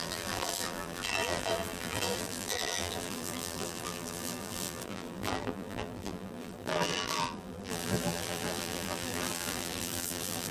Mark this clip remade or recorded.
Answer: remade